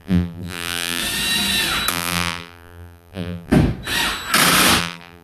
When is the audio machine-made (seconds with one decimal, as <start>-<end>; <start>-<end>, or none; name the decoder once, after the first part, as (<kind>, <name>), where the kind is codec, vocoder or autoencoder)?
0.0-1.0 (vocoder, BigVGAN v2); 1.9-3.5; 4.8-5.2